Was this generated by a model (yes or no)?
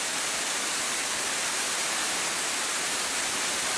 no